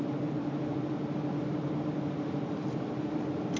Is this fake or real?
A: real